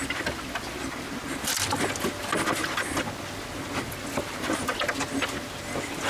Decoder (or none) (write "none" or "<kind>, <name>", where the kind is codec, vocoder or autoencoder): none